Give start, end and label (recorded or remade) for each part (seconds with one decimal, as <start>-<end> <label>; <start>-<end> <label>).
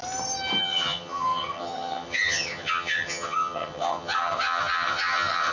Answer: 0.0-0.6 recorded; 0.6-5.5 remade